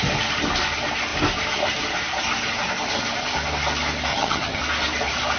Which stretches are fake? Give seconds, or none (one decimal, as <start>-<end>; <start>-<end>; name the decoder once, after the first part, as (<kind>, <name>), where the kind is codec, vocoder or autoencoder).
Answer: 4.1-4.6 (vocoder, HiFi-GAN)